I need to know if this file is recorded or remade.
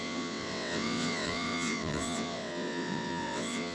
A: remade